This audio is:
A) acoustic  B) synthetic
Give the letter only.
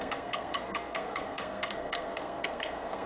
B